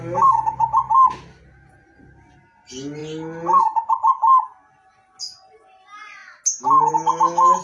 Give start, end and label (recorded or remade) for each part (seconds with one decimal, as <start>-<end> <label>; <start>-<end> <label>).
0.0-7.6 recorded